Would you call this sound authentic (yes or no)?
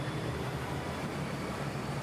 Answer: no